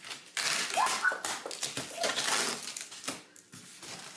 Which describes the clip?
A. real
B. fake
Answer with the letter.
A